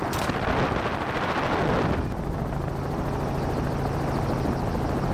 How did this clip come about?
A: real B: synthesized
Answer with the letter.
A